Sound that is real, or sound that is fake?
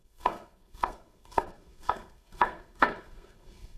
fake